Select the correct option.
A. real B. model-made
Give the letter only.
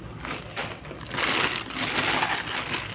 A